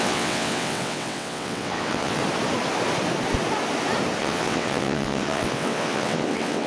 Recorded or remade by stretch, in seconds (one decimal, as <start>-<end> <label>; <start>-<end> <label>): 0.0-2.2 remade; 2.2-4.2 recorded; 4.2-6.7 remade